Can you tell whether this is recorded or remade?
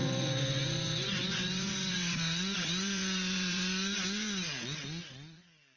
remade